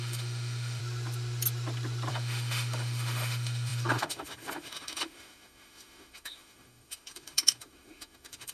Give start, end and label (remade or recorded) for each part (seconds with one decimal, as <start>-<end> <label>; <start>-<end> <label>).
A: 0.0-0.8 remade; 0.8-2.1 recorded; 2.1-8.5 remade